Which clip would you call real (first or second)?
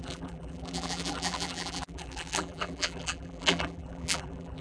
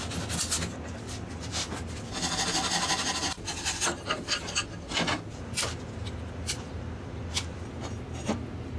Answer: second